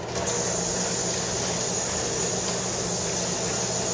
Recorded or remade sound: recorded